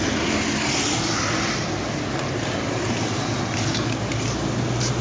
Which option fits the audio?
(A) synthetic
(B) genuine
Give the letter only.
B